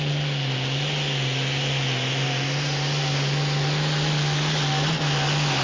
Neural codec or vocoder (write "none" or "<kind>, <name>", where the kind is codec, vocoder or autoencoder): none